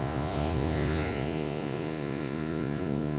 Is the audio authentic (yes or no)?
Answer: no